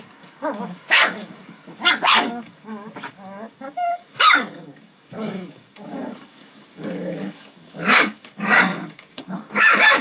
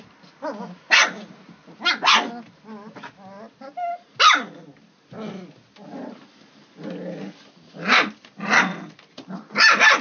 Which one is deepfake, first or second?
first